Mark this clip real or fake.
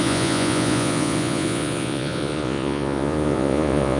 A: fake